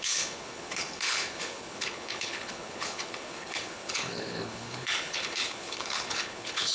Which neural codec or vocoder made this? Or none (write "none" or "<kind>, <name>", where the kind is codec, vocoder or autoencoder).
codec, HILCodec